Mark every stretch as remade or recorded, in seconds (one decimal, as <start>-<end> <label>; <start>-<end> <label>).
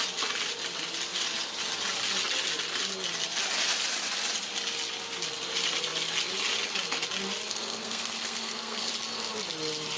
0.0-7.5 recorded; 7.5-8.9 remade; 8.9-10.0 recorded